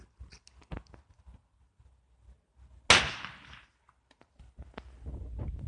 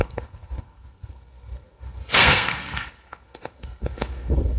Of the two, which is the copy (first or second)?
second